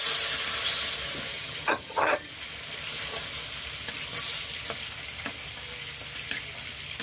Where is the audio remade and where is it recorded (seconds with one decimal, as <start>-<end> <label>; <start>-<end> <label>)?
0.0-1.3 recorded; 1.3-2.3 remade; 2.3-7.0 recorded